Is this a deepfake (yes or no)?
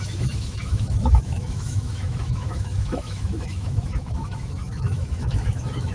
yes